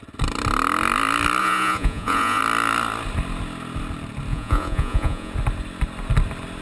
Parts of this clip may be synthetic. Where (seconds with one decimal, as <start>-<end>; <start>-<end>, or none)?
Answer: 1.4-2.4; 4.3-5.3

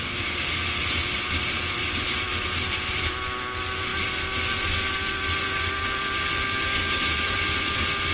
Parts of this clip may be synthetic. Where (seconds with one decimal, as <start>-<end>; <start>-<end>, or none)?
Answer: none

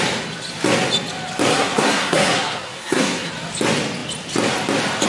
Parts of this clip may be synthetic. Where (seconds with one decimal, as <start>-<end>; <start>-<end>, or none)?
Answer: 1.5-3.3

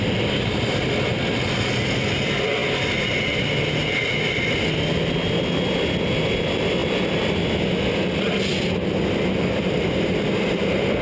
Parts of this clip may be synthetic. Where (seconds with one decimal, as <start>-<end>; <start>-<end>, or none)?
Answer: none